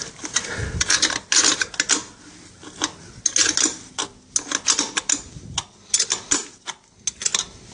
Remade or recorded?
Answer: recorded